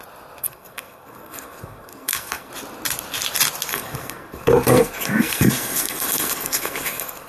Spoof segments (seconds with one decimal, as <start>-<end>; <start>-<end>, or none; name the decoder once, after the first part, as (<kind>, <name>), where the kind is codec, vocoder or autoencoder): 0.4-2.5 (codec, SNAC); 3.7-7.3